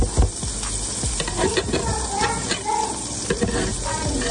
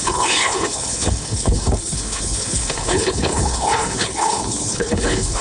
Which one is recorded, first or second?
first